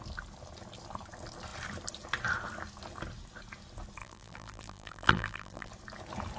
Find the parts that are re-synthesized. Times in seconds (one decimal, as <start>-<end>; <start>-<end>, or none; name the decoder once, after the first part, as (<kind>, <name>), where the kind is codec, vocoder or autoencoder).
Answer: 4.0-5.7 (vocoder, BigVGAN v2)

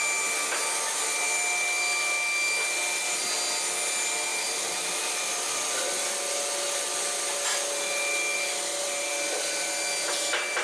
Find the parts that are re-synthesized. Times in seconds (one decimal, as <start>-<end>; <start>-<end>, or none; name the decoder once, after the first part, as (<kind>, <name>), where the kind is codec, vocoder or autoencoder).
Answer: 4.3-5.5 (vocoder, BigVGAN v2)

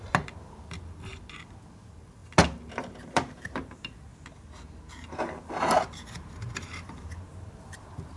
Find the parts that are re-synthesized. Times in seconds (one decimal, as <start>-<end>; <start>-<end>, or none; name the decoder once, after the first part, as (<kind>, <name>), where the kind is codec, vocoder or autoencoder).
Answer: 0.0-1.1 (vocoder, BigVGAN v2); 1.8-2.2; 2.8-4.1; 5.5-8.2

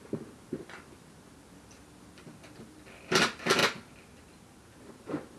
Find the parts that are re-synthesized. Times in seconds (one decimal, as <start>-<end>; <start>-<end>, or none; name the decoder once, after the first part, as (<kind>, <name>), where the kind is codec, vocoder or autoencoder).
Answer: none

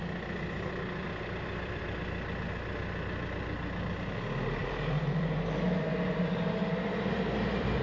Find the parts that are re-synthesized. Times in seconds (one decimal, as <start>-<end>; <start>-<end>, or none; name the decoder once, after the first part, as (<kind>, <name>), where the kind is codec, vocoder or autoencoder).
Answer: 1.0-1.8 (vocoder, BigVGAN v2); 4.6-5.4; 6.6-7.8

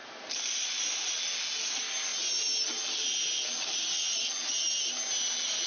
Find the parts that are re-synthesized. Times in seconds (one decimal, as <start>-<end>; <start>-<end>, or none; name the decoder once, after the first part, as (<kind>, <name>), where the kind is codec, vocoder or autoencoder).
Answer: 0.0-1.2 (vocoder, BigVGAN v2)